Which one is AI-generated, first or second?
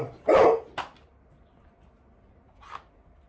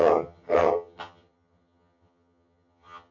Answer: second